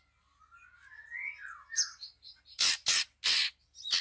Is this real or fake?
real